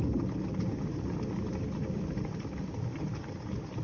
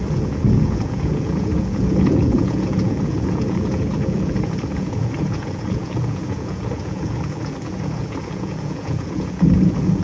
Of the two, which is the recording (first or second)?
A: first